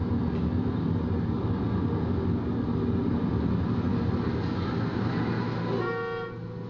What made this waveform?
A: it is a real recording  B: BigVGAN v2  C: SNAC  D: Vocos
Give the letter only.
A